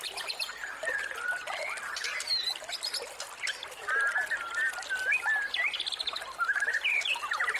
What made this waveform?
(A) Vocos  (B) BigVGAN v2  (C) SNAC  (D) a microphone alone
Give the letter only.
D